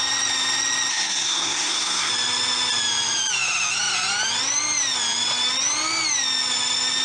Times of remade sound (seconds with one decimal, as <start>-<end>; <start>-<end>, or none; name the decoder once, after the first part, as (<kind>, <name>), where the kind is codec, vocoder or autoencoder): 0.9-2.1 (codec, SNAC)